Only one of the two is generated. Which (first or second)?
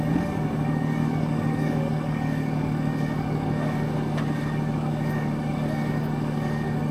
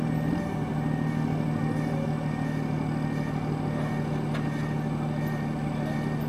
first